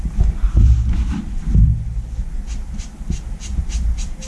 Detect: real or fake real